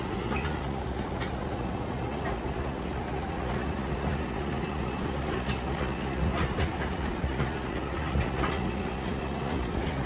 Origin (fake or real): fake